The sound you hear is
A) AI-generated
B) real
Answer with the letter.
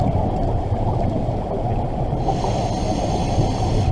B